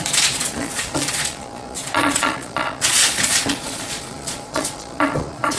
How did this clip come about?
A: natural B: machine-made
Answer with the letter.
B